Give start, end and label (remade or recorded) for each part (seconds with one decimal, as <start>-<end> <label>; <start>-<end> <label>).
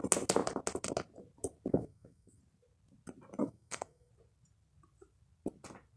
0.0-1.7 recorded; 1.7-2.4 remade; 2.4-3.4 recorded; 3.4-4.1 remade; 4.1-6.0 recorded